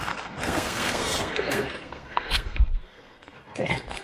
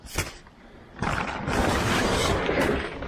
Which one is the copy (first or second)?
first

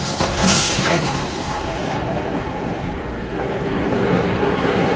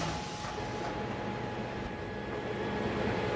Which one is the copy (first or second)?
first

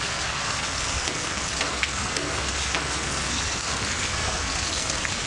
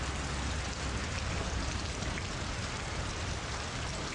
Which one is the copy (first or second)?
first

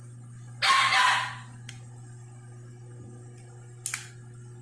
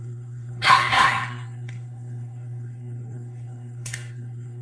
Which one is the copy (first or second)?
second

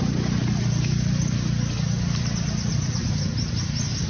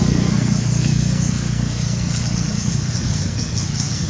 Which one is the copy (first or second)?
second